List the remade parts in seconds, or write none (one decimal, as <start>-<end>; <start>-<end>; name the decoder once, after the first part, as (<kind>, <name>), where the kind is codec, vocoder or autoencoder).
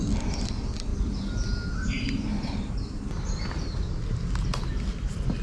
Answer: none